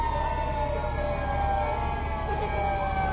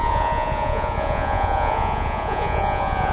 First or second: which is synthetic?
second